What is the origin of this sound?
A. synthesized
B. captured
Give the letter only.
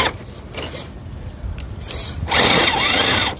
B